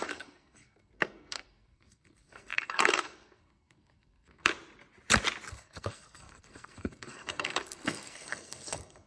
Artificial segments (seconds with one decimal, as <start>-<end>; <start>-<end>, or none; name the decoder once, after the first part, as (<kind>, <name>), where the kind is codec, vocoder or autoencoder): 0.0-4.5 (codec, SNAC); 5.5-9.1